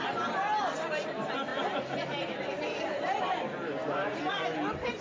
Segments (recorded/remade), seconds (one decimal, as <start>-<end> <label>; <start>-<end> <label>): 0.0-5.0 recorded